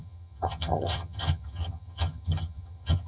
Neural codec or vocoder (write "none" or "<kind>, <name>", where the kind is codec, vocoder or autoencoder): vocoder, HiFi-GAN